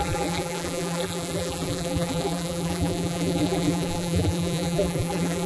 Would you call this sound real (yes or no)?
no